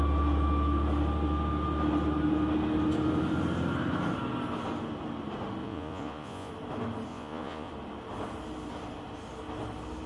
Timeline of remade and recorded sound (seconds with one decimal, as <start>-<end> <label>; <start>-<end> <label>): 0.0-5.6 recorded; 5.6-6.5 remade; 6.5-7.1 recorded; 7.1-7.7 remade; 7.7-10.1 recorded